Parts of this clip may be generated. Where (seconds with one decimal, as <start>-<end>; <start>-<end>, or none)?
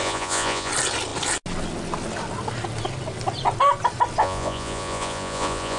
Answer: 0.0-0.7; 4.2-5.8